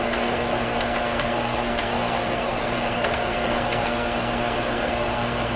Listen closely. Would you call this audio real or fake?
fake